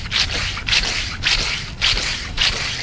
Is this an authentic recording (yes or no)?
yes